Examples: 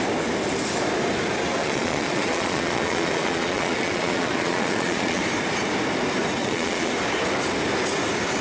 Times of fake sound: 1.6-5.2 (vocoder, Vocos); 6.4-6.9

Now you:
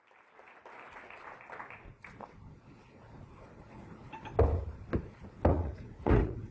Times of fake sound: 5.5-6.5 (vocoder, Vocos)

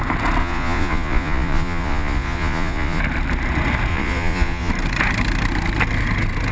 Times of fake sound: 0.4-3.0 (vocoder, Vocos); 3.9-4.7

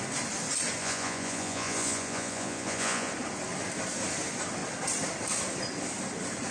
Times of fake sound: 0.8-3.1 (vocoder, Vocos)